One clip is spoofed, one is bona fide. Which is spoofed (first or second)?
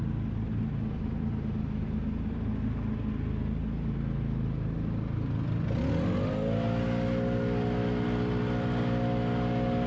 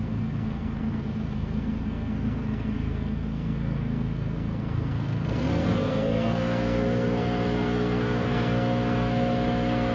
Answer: second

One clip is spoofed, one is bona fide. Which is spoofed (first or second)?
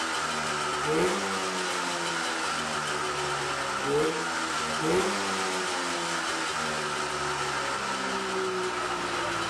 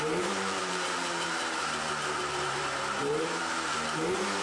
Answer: second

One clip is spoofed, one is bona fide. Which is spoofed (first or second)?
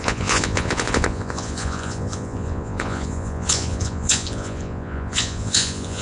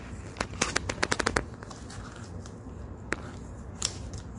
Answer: first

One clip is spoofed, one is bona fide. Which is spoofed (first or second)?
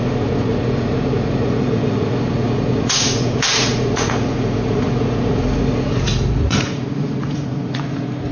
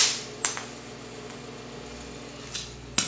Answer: first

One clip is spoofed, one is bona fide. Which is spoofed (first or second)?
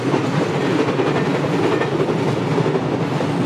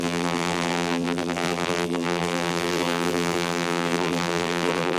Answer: second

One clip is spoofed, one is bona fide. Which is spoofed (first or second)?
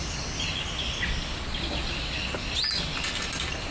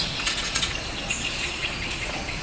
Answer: second